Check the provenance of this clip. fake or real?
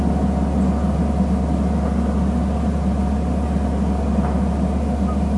real